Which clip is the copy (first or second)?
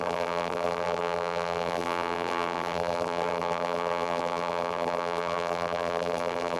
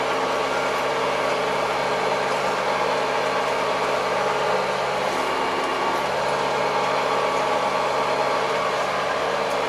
first